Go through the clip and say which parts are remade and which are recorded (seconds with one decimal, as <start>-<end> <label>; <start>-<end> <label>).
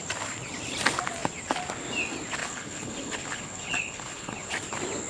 0.0-2.4 recorded; 2.4-4.5 remade; 4.5-5.1 recorded